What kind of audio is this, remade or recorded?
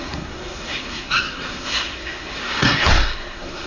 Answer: remade